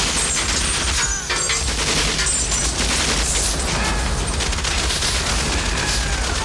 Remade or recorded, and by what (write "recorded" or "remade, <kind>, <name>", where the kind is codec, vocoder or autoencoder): recorded